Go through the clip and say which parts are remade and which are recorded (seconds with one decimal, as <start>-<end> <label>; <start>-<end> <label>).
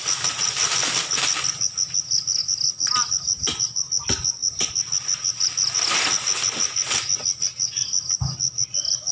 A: 0.0-9.1 recorded